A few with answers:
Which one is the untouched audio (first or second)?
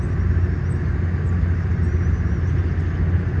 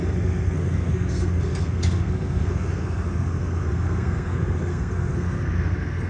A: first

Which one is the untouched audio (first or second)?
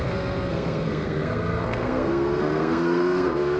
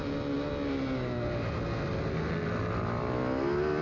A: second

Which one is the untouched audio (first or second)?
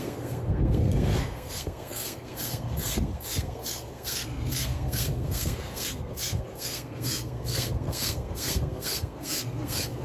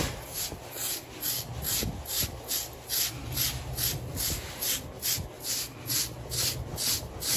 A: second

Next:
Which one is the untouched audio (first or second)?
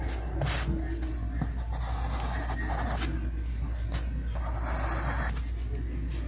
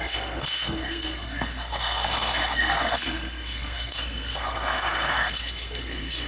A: first